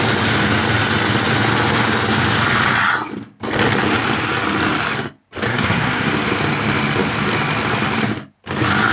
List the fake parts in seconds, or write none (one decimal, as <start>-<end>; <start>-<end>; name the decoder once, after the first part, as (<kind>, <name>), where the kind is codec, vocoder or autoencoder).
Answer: 5.5-6.1 (codec, SNAC)